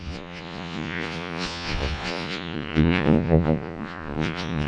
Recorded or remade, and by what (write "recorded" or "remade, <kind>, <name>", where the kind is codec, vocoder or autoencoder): remade, vocoder, Vocos